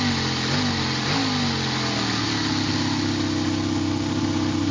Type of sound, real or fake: real